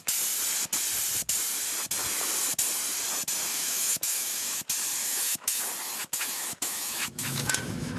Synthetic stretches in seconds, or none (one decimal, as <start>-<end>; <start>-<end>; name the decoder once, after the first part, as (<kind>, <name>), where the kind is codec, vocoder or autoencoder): 3.5-4.6 (autoencoder, DAC-VAE); 5.0-5.6; 6.0-8.0